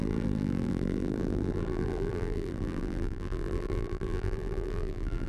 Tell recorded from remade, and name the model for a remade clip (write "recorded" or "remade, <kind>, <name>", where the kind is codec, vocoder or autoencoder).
remade, vocoder, BigVGAN v2